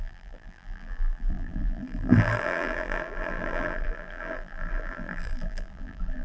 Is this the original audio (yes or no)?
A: no